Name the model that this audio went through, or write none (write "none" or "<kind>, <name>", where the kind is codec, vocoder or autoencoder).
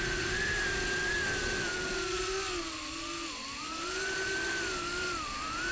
none